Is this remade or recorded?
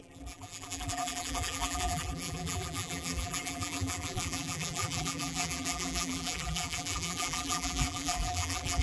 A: remade